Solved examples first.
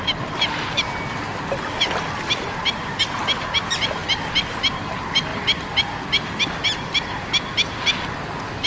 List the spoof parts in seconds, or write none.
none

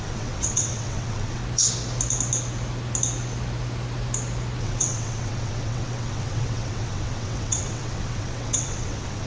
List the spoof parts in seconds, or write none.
0.0-1.4 (vocoder, WaveNeXt); 4.6-9.3

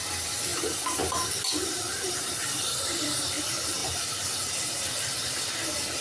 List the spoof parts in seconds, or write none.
0.5-3.4 (vocoder, BigVGAN v2); 3.8-4.5

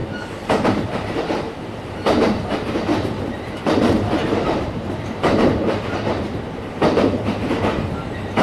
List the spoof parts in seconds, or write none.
0.0-8.4 (vocoder, BigVGAN v2)

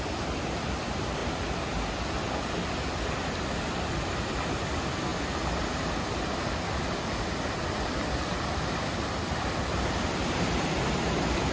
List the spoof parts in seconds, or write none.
0.0-1.2 (vocoder, BigVGAN v2); 2.9-5.1; 6.8-11.5

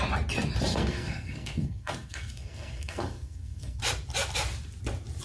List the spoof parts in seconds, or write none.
0.7-3.8 (codec, SNAC)

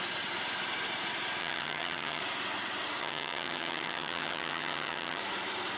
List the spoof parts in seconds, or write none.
1.4-2.2 (vocoder, HiFi-GAN); 3.0-5.2

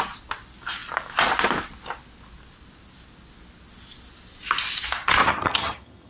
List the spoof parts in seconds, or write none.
5.3-6.1 (vocoder, HiFi-GAN)